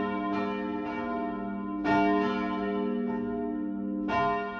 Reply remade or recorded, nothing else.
recorded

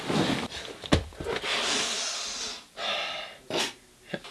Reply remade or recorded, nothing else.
recorded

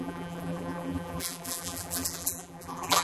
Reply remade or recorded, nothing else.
remade